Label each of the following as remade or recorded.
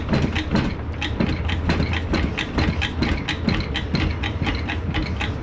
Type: recorded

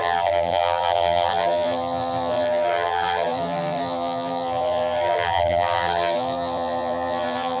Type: remade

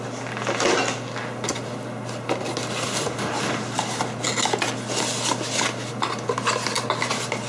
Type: recorded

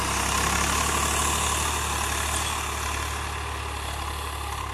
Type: recorded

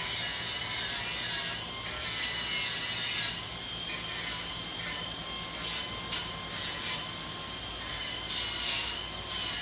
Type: recorded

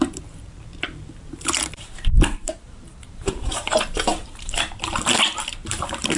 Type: remade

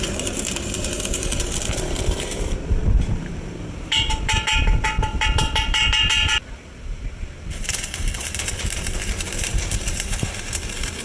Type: remade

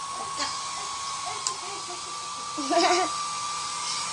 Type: recorded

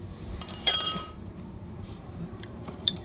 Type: remade